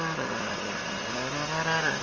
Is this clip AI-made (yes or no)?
no